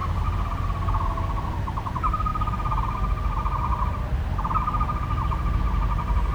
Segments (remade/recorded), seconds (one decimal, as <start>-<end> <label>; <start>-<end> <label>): 0.0-6.3 recorded